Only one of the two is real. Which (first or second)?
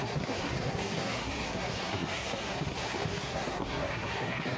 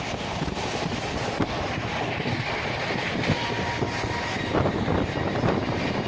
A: second